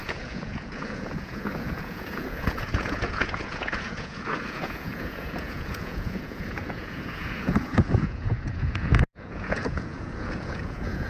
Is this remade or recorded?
remade